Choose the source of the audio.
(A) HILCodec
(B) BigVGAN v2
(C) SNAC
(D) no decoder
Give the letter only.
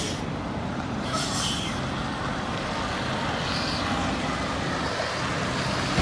D